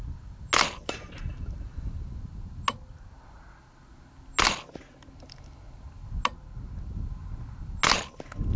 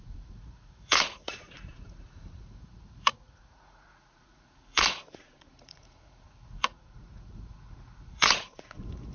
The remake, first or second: second